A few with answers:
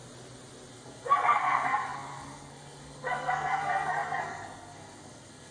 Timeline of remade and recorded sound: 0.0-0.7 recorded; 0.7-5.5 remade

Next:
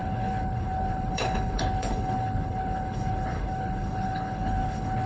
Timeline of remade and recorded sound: 0.0-5.1 remade

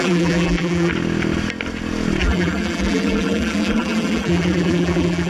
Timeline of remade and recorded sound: 0.0-0.9 remade; 0.9-2.2 recorded; 2.2-5.3 remade

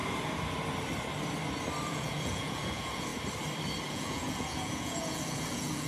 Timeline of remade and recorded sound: 0.0-1.9 recorded; 1.9-3.1 remade; 3.1-3.9 recorded; 3.9-5.9 remade

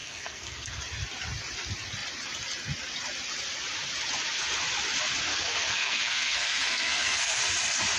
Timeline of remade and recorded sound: 0.0-0.8 remade; 0.8-5.3 recorded; 5.3-7.4 remade; 7.4-8.0 recorded